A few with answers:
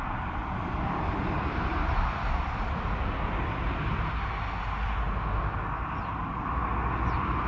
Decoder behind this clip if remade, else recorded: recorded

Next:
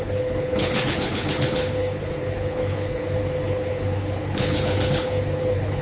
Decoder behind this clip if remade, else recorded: remade, codec, HILCodec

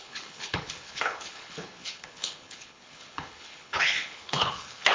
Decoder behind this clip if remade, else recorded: remade, codec, HILCodec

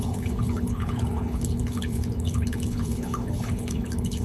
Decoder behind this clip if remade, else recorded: remade, codec, HILCodec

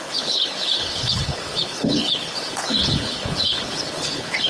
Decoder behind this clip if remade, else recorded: remade, codec, HILCodec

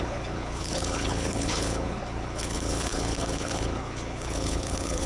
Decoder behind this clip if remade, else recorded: remade, codec, HILCodec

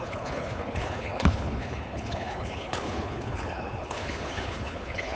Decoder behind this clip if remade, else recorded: remade, codec, HILCodec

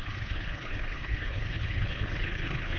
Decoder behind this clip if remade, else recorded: remade, codec, HILCodec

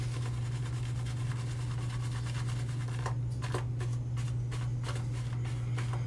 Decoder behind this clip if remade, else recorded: recorded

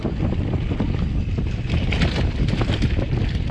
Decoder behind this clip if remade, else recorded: recorded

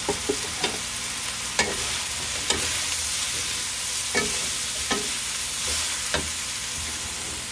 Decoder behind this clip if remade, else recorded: recorded